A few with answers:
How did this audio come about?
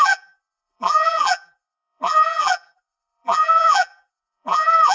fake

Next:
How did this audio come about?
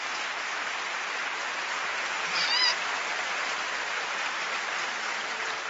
fake